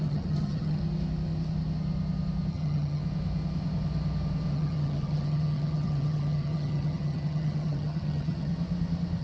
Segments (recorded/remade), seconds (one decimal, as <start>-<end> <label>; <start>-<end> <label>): 0.0-0.8 remade; 0.8-2.5 recorded; 2.5-3.0 remade; 3.0-4.5 recorded; 4.5-8.5 remade; 8.5-9.2 recorded